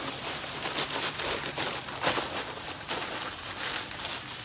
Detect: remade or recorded recorded